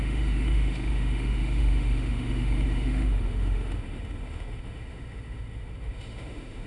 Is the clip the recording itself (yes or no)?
no